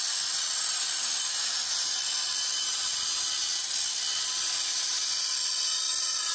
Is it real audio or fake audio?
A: real